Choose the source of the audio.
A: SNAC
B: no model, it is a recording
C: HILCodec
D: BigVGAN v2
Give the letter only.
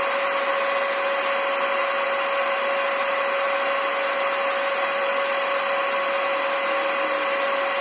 B